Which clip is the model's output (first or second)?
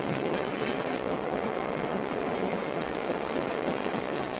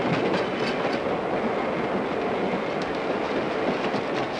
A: first